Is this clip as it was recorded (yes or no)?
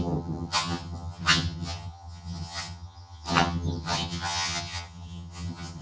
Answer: no